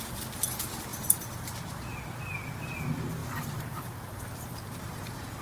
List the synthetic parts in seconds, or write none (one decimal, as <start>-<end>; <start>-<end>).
3.2-3.8